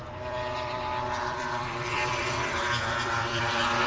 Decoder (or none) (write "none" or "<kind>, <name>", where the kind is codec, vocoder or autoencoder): vocoder, BigVGAN v2